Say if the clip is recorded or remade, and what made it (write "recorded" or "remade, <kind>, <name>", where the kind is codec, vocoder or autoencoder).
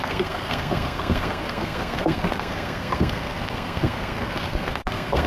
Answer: remade, codec, SNAC